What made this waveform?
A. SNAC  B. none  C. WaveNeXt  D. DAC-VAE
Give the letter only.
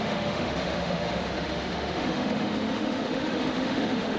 D